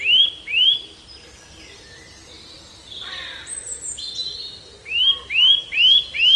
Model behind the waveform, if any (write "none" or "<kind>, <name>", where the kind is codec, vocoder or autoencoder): none